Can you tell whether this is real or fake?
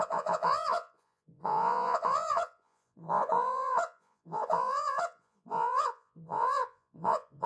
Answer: fake